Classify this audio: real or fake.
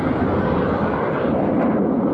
real